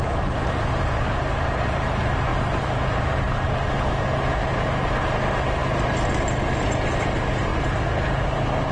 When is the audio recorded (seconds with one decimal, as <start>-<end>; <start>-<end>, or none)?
0.0-8.7